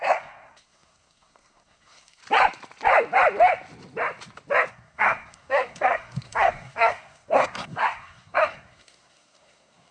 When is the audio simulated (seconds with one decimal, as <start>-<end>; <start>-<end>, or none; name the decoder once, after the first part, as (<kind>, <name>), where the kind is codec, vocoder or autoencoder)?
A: 0.0-2.2 (codec, SNAC); 4.7-9.9